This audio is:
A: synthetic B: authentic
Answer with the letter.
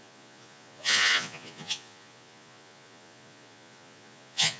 A